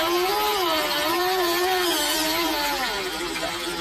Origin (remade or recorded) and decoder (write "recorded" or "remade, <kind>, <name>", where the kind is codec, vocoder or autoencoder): recorded